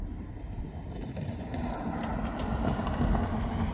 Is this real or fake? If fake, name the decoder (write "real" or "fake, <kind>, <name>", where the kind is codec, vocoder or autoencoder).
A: fake, vocoder, BigVGAN v2